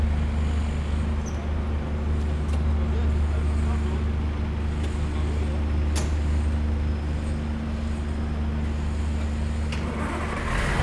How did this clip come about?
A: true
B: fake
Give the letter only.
A